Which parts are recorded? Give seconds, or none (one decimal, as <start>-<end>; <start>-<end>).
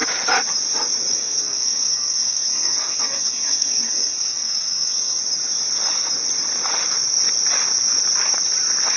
0.0-1.1; 5.2-9.0